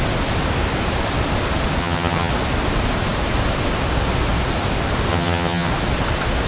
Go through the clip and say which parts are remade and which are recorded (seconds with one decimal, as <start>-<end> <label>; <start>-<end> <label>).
0.0-1.8 recorded; 1.8-2.3 remade; 2.3-5.1 recorded; 5.1-5.7 remade; 5.7-6.5 recorded